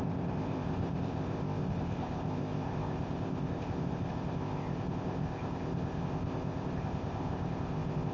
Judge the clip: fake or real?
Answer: fake